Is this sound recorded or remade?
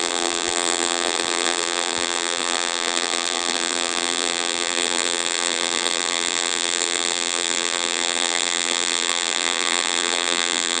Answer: remade